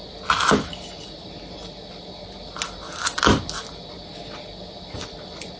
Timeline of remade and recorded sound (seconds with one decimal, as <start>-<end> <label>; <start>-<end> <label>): 0.0-5.6 recorded